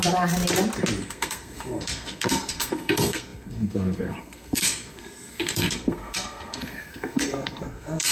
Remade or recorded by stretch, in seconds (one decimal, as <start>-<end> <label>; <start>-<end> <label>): 0.0-1.0 recorded; 1.0-8.1 remade